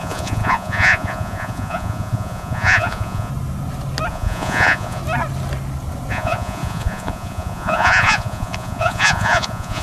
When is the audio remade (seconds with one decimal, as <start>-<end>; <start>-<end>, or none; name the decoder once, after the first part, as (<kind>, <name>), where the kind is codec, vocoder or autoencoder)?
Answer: 0.0-3.3 (vocoder, Vocos); 4.1-5.0; 6.1-9.8